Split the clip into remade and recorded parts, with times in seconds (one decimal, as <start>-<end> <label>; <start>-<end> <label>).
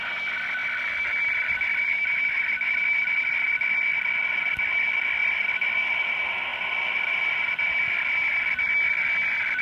0.0-0.6 recorded; 0.6-3.8 remade; 3.8-5.2 recorded; 5.2-6.1 remade; 6.1-6.5 recorded; 6.5-7.5 remade; 7.5-9.6 recorded